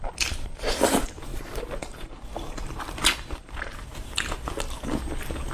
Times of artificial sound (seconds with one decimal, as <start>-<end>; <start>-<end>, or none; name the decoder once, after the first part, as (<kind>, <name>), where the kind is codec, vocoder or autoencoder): 1.3-4.5 (vocoder, BigVGAN v2)

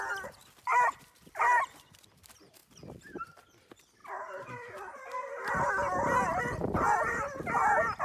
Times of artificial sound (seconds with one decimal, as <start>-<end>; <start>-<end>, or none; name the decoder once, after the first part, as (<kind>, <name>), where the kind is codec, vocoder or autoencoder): 0.7-1.8 (vocoder, BigVGAN v2)

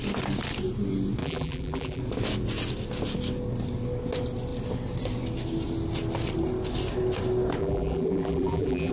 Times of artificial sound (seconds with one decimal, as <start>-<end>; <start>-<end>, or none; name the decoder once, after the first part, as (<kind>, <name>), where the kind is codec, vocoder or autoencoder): 1.2-2.0 (vocoder, BigVGAN v2); 7.6-8.9

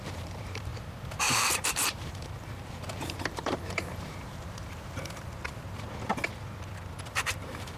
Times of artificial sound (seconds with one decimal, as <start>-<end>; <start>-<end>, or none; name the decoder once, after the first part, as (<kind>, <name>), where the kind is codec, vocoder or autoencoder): 0.0-0.7 (vocoder, BigVGAN v2); 1.3-5.3; 7.1-7.8

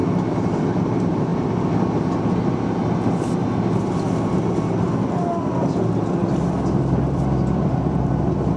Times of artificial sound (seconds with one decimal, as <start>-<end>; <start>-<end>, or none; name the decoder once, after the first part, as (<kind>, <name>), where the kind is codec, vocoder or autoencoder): 0.8-1.3 (vocoder, BigVGAN v2); 2.4-3.4; 6.3-8.6

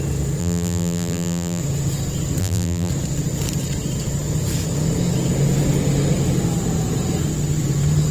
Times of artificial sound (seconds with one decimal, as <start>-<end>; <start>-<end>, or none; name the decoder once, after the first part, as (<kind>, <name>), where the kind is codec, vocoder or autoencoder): 0.4-1.6 (vocoder, BigVGAN v2); 2.4-2.9